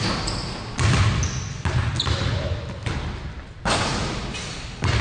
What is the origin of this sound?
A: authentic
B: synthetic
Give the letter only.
A